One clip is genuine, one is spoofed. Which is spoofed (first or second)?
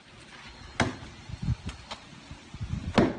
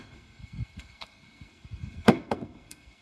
second